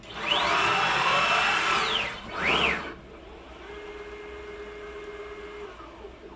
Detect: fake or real real